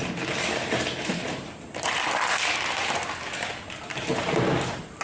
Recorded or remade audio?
recorded